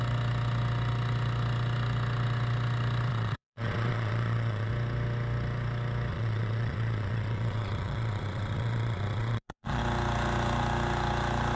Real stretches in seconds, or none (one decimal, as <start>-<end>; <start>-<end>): 0.0-3.1; 4.7-6.1; 9.8-11.6